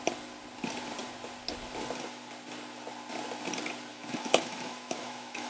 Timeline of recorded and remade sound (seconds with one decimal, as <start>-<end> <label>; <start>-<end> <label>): 0.0-3.9 recorded; 3.9-5.5 remade